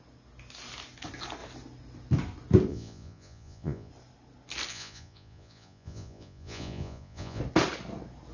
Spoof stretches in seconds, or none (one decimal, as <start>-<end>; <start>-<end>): 2.7-3.9; 4.7-7.4